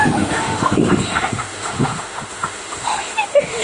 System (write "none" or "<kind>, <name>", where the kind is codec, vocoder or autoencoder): autoencoder, DAC-VAE